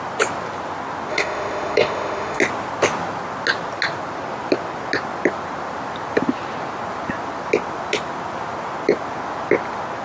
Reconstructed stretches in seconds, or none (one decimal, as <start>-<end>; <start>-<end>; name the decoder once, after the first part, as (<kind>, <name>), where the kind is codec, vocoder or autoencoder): 1.1-2.4 (autoencoder, DAC-VAE)